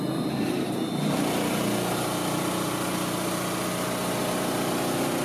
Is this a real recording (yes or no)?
yes